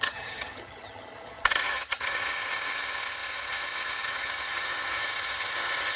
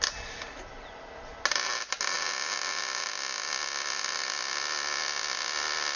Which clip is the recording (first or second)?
second